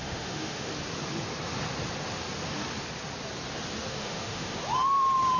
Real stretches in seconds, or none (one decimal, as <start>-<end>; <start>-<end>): 0.7-3.9; 4.6-5.4